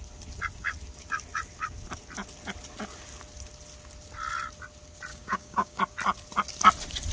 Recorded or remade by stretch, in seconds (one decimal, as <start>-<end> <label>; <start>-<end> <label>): 0.0-5.1 recorded; 5.1-5.8 remade; 5.8-7.1 recorded